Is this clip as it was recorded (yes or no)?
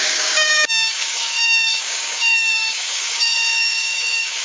no